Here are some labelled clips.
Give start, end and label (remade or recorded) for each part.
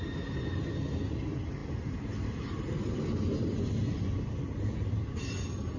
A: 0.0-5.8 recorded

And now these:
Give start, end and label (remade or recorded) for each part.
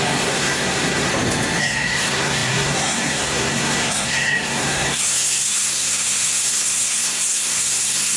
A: 0.0-1.1 remade; 1.1-1.6 recorded; 1.6-8.2 remade